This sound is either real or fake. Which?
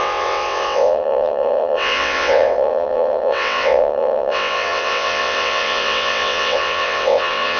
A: fake